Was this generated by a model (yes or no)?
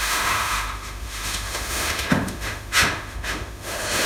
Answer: yes